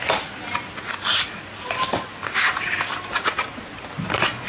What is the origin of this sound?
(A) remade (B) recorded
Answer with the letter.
B